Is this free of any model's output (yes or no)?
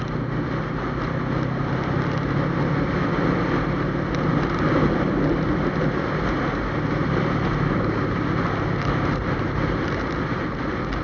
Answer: yes